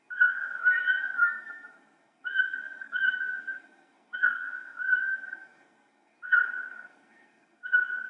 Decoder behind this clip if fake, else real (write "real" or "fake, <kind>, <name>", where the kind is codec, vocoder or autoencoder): fake, codec, SNAC